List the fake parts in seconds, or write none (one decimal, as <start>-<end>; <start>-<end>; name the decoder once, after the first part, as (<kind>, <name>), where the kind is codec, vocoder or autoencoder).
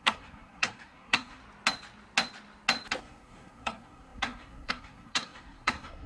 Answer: 0.0-1.4 (codec, SNAC); 3.0-6.1